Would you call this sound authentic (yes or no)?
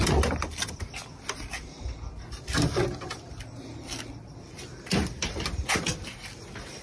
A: yes